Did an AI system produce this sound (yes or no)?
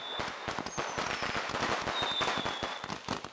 no